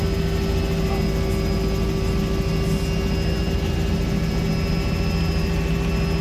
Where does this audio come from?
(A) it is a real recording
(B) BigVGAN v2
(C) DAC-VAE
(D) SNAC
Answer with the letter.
A